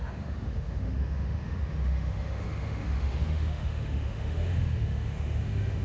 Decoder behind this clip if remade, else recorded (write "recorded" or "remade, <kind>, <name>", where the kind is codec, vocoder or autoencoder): remade, autoencoder, DAC-VAE